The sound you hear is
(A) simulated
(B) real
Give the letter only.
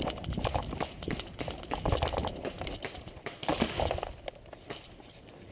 B